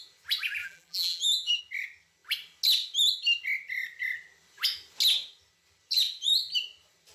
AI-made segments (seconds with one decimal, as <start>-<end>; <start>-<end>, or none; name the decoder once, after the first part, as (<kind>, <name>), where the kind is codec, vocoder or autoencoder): 0.6-1.6 (vocoder, BigVGAN v2)